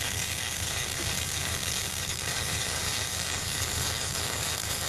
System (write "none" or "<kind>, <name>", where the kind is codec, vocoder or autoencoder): codec, DAC